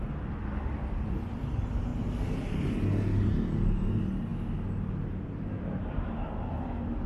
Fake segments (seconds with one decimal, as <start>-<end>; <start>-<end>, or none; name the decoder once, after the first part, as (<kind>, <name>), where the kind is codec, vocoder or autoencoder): none